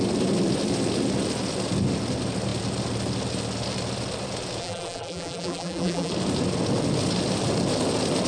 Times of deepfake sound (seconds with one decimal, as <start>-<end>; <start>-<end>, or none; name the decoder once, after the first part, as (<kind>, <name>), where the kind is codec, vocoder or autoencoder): 4.6-6.1 (vocoder, BigVGAN v2)